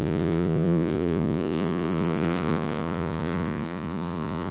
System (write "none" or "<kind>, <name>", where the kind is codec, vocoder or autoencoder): vocoder, Vocos